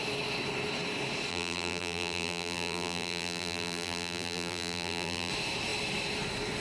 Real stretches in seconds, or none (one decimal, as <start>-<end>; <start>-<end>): 0.0-1.3; 5.3-6.6